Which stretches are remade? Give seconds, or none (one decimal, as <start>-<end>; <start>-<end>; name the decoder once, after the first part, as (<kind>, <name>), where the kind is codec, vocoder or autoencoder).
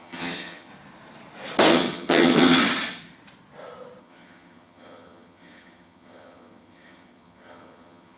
0.0-0.7 (vocoder, HiFi-GAN); 1.7-2.6; 4.0-8.2